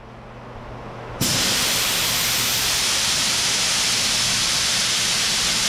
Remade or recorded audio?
recorded